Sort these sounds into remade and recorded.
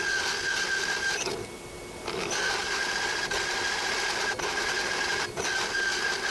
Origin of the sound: recorded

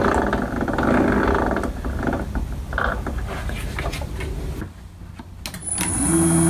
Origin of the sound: recorded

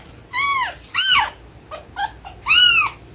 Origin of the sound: recorded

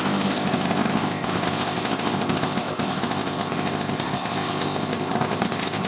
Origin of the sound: remade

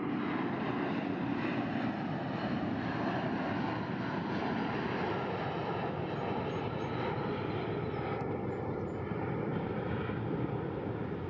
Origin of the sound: recorded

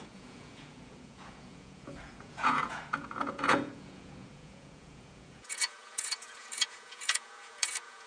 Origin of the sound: remade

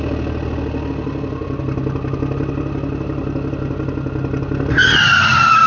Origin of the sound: recorded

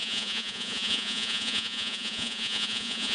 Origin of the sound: remade